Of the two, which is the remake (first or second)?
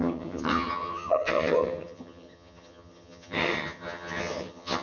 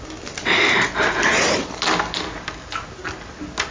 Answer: first